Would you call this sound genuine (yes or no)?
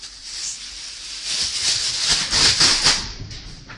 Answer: yes